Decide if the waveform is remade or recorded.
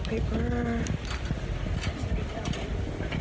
recorded